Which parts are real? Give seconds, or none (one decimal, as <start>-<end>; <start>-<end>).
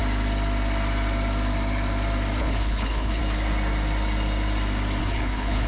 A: 0.0-2.4; 3.2-5.0